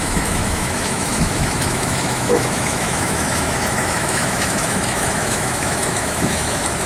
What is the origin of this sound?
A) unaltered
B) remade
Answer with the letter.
B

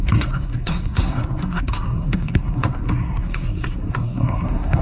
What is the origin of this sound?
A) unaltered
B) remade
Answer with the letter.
B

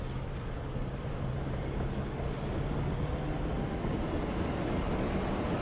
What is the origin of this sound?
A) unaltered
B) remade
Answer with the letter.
A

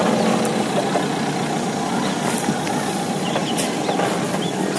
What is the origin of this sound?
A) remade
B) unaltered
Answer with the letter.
B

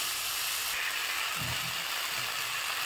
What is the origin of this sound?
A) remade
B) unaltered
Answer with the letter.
B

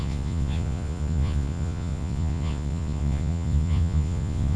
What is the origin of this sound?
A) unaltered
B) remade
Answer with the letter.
B